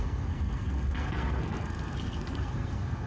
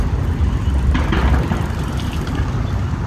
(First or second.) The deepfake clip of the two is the first